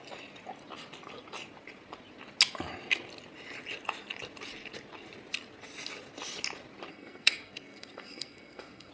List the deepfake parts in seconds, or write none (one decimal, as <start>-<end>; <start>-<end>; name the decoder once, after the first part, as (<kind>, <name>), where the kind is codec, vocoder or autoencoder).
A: 6.9-8.9 (codec, SNAC)